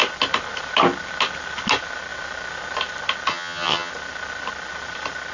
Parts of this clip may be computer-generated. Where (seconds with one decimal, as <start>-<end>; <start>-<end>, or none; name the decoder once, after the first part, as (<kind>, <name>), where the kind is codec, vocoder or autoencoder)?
3.3-3.9 (vocoder, HiFi-GAN)